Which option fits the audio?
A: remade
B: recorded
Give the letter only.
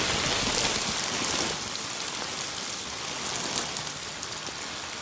B